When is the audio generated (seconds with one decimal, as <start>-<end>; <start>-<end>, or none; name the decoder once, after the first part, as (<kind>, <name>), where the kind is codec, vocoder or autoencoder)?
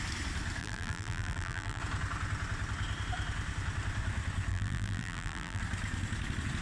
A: 0.6-1.8 (vocoder, BigVGAN v2); 4.5-5.6